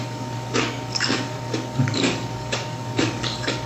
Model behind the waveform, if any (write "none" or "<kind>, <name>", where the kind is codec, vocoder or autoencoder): codec, DAC